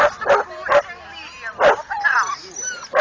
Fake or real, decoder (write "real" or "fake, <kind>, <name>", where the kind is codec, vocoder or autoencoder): real